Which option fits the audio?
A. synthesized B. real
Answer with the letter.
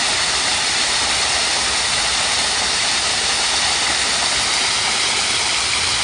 B